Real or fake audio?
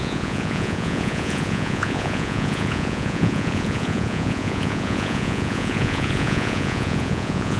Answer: fake